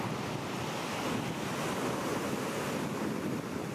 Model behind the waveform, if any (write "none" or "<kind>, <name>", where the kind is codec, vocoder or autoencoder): none